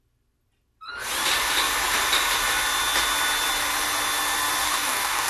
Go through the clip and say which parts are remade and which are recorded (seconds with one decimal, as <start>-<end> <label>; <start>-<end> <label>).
0.0-4.6 recorded; 4.6-5.3 remade